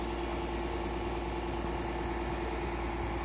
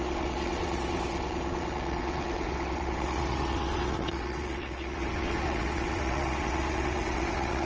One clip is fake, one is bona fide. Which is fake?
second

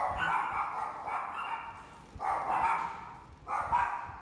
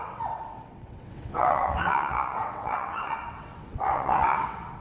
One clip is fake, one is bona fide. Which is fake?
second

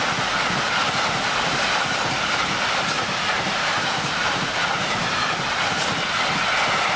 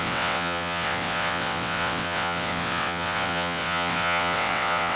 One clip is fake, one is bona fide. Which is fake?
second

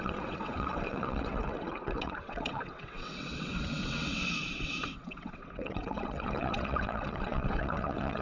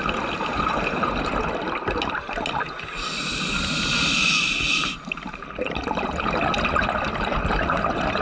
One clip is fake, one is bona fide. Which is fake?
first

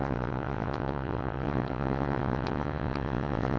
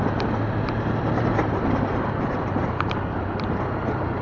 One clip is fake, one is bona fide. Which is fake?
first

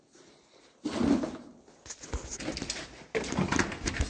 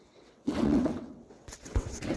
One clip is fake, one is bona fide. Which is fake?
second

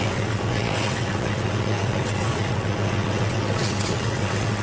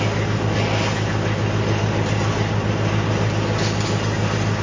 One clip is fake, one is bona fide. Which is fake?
first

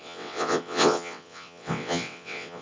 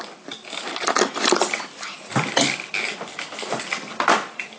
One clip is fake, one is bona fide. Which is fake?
first